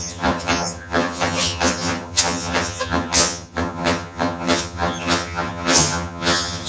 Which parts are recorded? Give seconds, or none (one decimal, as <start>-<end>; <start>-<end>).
none